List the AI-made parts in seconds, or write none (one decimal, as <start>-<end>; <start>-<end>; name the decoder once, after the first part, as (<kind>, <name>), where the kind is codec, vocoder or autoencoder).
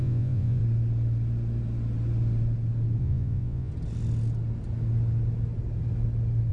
0.0-0.6 (vocoder, Vocos); 3.0-3.7